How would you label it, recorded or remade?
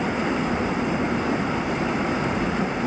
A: recorded